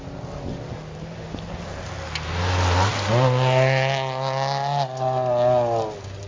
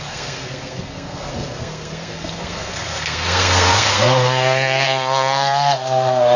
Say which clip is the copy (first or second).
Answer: second